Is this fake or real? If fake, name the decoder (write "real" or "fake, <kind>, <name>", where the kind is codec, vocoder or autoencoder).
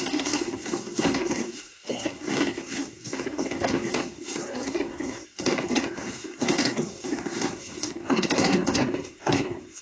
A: fake, codec, SNAC